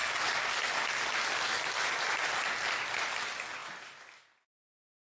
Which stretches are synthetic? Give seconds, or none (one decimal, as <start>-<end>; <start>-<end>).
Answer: none